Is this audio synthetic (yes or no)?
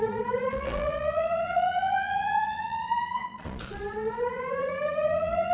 yes